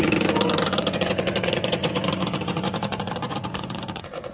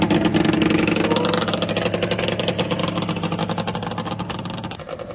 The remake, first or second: first